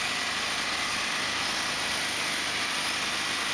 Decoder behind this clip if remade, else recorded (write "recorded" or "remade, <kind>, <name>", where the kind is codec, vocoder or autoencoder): recorded